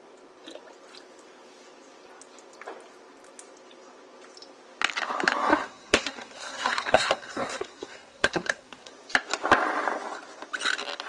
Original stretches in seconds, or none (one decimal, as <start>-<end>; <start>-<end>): 0.0-5.5; 8.9-11.1